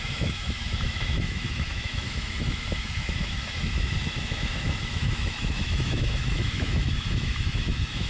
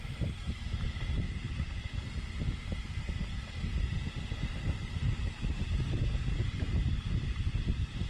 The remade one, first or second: first